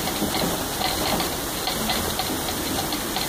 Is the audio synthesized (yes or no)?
no